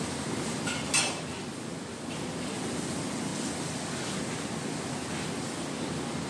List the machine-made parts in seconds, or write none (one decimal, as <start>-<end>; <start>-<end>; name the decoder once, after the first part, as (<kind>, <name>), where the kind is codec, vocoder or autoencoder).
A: none